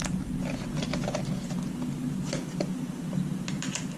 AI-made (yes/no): no